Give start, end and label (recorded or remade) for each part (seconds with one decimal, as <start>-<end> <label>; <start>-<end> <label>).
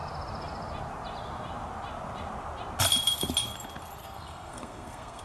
0.0-4.0 recorded; 4.0-5.2 remade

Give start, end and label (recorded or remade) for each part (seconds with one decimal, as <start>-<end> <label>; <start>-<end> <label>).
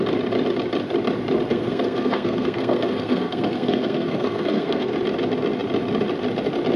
0.0-1.5 recorded; 1.5-5.0 remade; 5.0-6.8 recorded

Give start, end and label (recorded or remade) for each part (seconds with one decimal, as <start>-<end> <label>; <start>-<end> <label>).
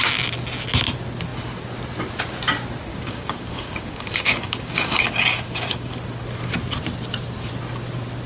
0.0-2.9 recorded; 2.9-5.9 remade; 5.9-8.3 recorded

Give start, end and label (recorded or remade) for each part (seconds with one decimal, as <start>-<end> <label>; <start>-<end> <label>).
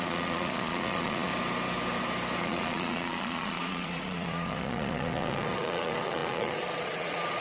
0.0-1.3 remade; 1.3-2.4 recorded; 2.4-7.4 remade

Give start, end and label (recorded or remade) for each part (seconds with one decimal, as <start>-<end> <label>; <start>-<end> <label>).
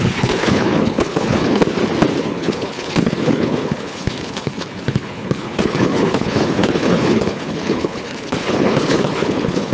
0.0-1.6 remade; 1.6-2.2 recorded; 2.2-9.7 remade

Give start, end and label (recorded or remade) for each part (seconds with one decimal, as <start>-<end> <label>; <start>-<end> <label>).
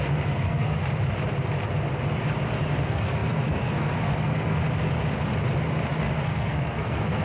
0.0-0.8 remade; 0.8-2.8 recorded; 2.8-4.6 remade; 4.6-6.0 recorded; 6.0-7.2 remade